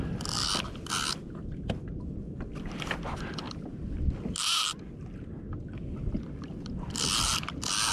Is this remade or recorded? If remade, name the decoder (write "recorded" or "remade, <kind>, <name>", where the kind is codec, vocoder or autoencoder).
recorded